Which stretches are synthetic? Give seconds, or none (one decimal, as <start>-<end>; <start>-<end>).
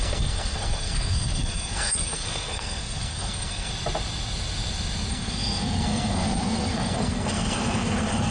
0.0-3.7; 5.1-8.3